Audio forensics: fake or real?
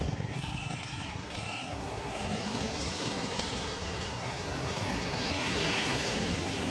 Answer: fake